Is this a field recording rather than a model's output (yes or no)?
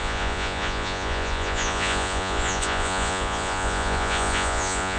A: no